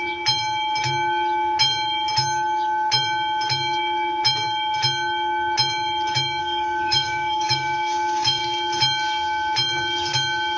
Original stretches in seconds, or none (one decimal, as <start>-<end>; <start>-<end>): 0.0-6.4; 8.4-10.6

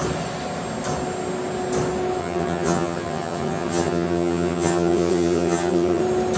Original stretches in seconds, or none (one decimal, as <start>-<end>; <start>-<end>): 0.0-2.2; 6.0-6.4

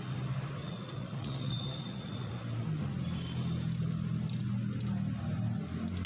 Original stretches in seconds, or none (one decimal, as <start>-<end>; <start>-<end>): 0.0-0.6; 2.3-6.1

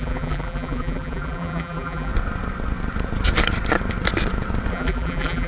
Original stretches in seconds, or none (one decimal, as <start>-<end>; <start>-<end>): 2.1-4.7

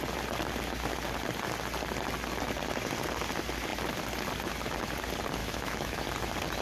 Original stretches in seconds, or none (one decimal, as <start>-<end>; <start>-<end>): 0.0-5.4; 6.0-6.6

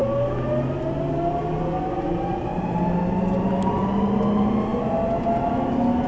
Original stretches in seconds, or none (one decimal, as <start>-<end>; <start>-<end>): 0.0-6.1

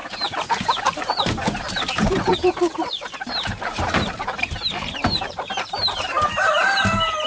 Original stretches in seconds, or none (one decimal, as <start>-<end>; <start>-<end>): 0.0-0.5

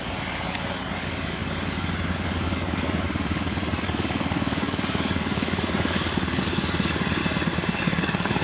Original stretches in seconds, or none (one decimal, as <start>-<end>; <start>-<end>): 7.2-7.8